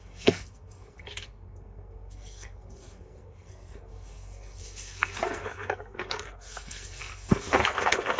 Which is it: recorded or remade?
remade